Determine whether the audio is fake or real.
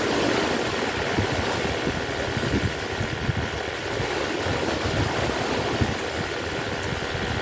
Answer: real